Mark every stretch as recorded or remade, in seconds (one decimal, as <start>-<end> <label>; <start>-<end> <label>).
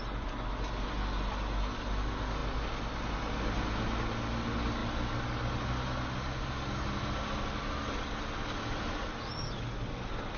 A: 0.0-10.4 recorded